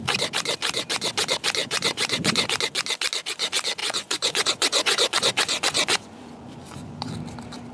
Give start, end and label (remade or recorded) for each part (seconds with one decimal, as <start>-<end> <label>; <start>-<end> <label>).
0.0-1.6 recorded; 1.6-2.5 remade; 2.5-3.8 recorded; 3.8-7.1 remade; 7.1-7.7 recorded